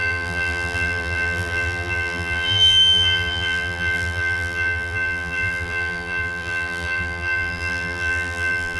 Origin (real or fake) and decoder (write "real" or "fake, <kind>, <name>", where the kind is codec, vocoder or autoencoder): fake, vocoder, BigVGAN v2